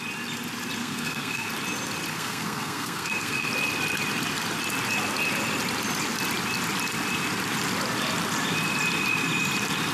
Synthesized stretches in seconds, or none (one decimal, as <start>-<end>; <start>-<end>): 0.8-1.5; 2.1-3.5

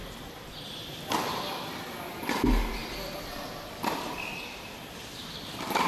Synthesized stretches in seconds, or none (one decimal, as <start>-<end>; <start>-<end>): 0.0-1.5; 2.1-2.8; 4.6-5.9

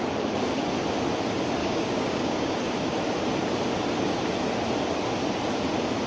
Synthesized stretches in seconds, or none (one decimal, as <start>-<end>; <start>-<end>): 1.6-2.6

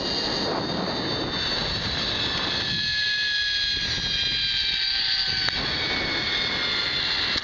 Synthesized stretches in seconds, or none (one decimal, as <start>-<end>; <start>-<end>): none

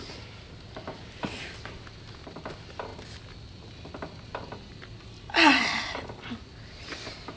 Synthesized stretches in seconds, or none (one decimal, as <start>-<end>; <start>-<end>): none

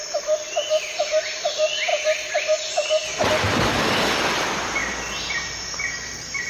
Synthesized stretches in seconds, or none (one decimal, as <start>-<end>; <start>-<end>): none

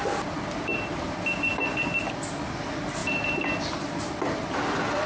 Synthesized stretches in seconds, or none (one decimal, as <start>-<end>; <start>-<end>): none